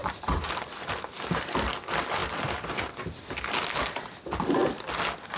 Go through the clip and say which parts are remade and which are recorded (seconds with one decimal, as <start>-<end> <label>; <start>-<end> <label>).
0.0-0.9 remade; 0.9-5.4 recorded